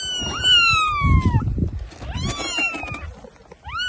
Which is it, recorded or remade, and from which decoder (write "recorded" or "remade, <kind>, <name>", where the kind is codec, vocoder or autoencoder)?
recorded